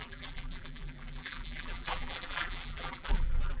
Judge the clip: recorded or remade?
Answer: remade